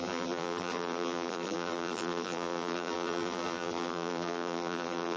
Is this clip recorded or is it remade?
remade